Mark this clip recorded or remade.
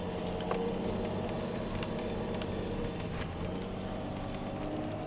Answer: recorded